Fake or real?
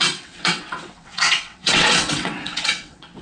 fake